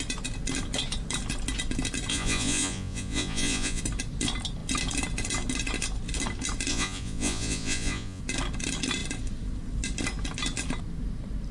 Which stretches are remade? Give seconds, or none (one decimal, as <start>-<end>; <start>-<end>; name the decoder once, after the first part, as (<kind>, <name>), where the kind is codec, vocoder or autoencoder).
2.1-3.8 (vocoder, Vocos); 6.7-8.2